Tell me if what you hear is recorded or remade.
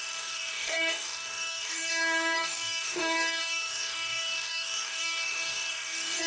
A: remade